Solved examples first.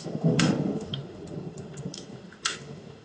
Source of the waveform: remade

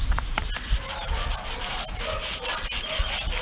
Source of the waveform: remade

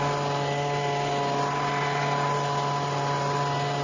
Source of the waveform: recorded